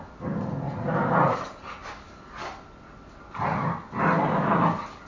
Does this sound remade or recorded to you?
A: recorded